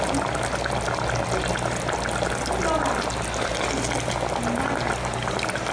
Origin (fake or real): real